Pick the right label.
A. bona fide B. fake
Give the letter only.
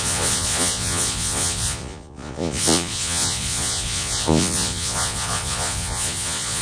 B